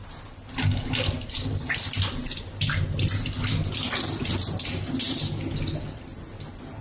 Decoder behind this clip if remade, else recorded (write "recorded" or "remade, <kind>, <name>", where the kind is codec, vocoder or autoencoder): recorded